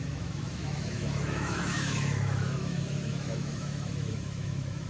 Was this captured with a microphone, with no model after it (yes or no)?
no